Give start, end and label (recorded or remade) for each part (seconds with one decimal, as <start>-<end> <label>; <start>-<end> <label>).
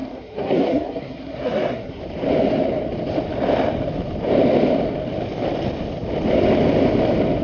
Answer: 0.0-2.0 remade; 2.0-7.4 recorded